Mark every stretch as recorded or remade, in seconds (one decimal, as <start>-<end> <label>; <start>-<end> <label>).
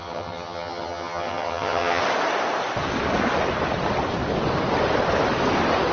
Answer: 0.0-2.0 remade; 2.0-5.9 recorded